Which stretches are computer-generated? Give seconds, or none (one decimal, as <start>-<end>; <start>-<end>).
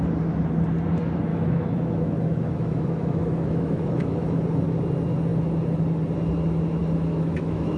1.3-4.4; 6.8-7.8